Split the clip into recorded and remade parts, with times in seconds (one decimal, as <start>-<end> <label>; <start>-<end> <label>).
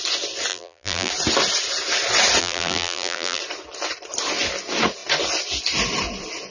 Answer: 0.0-0.5 recorded; 0.5-1.1 remade; 1.1-2.4 recorded; 2.4-3.4 remade; 3.4-6.5 recorded